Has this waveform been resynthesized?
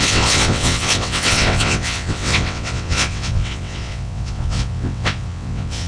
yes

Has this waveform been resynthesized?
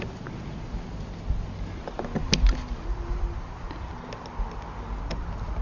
no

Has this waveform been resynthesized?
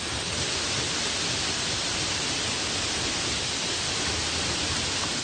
no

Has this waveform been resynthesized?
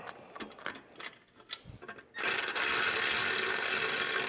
no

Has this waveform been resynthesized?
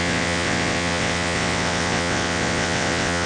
yes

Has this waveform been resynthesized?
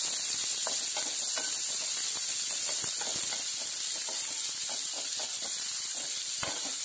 no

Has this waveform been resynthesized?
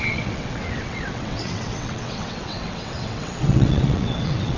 yes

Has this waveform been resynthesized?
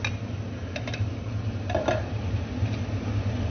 no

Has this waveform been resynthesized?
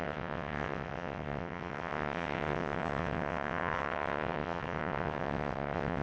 yes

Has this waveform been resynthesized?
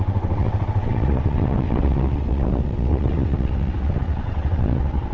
yes